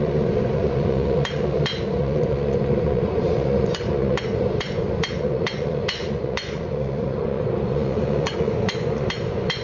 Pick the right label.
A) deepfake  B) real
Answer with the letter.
A